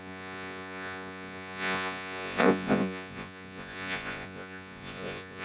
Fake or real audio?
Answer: fake